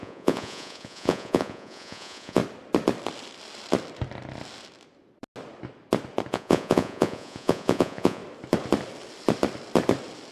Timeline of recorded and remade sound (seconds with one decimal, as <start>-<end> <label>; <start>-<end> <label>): 0.0-2.4 remade; 2.4-6.3 recorded; 6.3-8.2 remade; 8.2-10.3 recorded